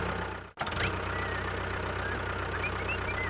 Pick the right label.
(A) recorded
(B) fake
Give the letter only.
A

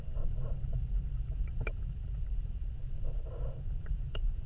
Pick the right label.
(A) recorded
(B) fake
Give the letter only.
B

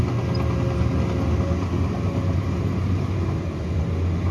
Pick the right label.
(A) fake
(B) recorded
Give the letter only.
B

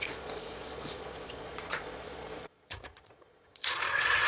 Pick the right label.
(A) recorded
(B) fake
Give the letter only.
B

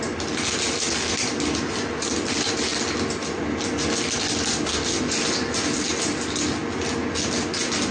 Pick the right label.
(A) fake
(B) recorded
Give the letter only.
B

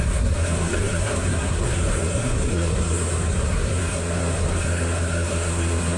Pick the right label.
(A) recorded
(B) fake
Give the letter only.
B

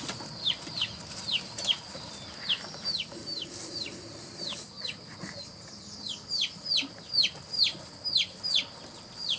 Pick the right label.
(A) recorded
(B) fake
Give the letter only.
A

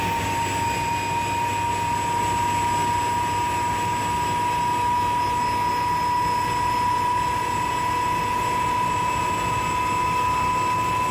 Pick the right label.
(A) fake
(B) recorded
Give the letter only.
B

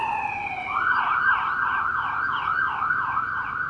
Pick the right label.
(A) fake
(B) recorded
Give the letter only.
B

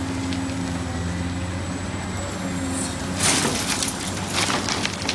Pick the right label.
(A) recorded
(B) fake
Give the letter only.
A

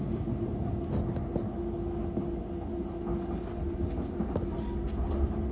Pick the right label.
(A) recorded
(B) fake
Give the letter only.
A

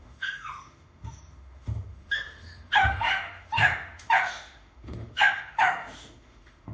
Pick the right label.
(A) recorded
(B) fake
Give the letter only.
B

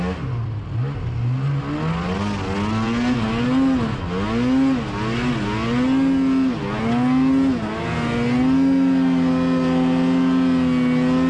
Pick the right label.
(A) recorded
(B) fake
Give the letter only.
A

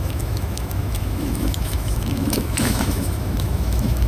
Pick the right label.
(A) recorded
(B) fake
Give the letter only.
B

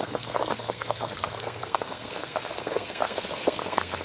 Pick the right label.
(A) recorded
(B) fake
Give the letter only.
B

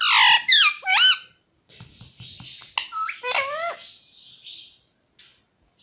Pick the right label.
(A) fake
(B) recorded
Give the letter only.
B